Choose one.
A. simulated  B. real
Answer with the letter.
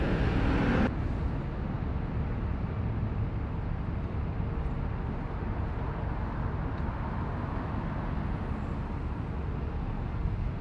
B